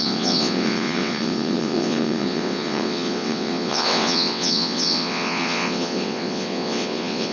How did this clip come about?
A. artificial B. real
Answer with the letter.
A